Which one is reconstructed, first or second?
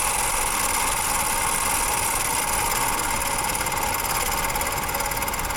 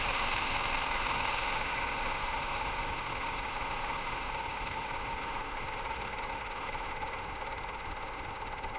second